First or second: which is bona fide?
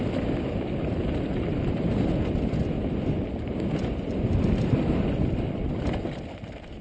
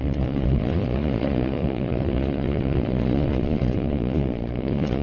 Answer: first